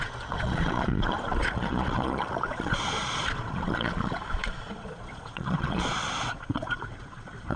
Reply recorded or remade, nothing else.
remade